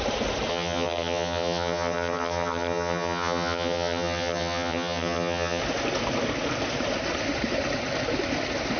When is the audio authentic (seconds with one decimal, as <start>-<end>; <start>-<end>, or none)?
0.0-0.5; 5.6-8.8